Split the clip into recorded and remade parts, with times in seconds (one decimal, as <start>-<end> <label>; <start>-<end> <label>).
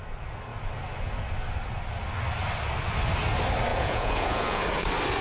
0.0-3.7 recorded; 3.7-4.6 remade; 4.6-5.2 recorded